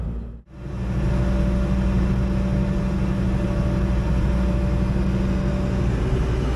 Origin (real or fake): real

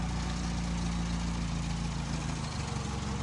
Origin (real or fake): real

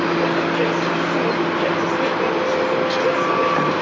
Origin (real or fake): real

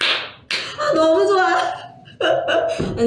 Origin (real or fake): real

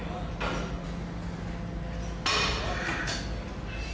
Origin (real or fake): real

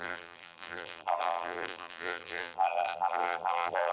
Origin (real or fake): fake